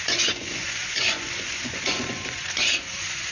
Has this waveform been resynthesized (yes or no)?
yes